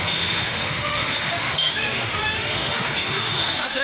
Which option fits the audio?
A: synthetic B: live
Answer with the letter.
A